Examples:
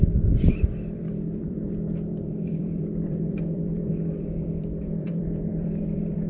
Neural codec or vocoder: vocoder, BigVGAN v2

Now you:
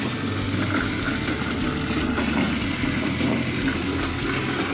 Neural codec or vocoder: none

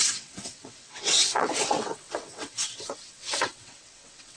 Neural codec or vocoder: vocoder, WaveNeXt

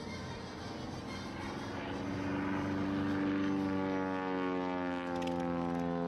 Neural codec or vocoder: none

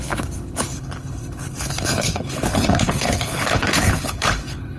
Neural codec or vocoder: codec, HILCodec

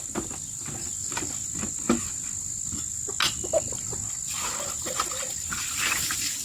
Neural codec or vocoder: none